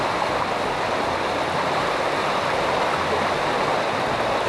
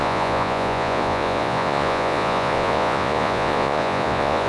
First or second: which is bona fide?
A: first